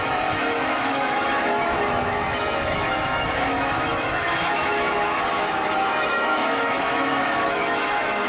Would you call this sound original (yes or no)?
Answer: no